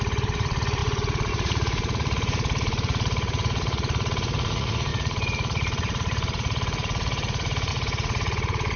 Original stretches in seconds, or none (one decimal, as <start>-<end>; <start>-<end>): none

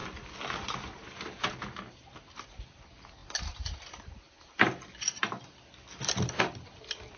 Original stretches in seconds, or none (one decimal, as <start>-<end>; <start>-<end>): 0.0-7.2

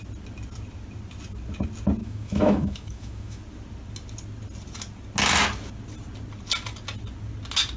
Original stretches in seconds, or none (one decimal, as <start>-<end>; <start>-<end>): 0.0-2.0; 3.4-7.8

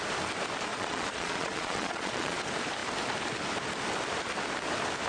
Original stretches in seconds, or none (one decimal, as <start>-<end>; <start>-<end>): 0.0-0.7; 2.4-5.1

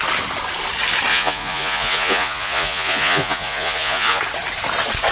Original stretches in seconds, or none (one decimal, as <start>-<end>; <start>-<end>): 0.0-1.1; 4.2-5.1